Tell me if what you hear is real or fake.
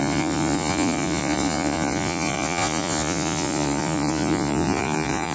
fake